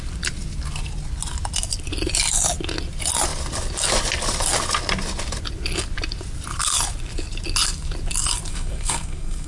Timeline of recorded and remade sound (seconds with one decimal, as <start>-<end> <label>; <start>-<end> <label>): 0.0-8.5 recorded; 8.5-9.5 remade